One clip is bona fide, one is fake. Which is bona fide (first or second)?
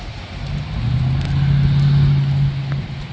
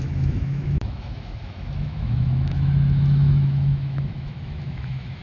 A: first